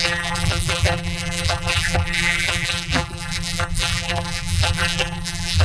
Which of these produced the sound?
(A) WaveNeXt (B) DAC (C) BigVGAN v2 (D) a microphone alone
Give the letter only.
C